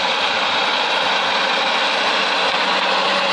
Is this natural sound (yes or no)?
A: yes